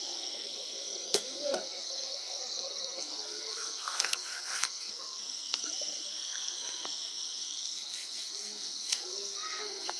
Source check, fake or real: fake